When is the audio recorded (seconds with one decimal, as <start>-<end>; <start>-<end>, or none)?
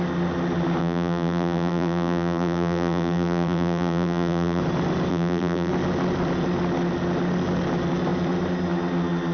0.0-0.8; 4.6-5.1; 5.7-9.3